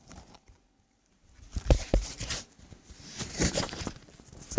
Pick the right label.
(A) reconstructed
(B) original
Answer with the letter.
A